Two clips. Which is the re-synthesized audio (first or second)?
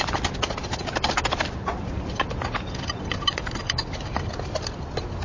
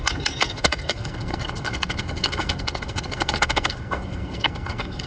second